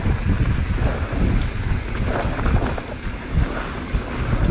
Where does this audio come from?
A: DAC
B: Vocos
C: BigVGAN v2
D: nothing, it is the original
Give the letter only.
D